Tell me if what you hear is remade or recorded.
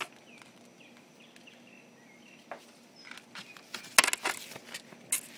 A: recorded